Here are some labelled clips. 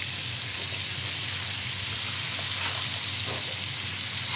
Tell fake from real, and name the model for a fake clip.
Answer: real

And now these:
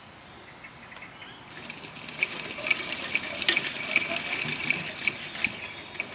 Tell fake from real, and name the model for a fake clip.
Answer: real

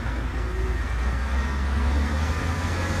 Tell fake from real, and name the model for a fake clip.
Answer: fake, codec, SNAC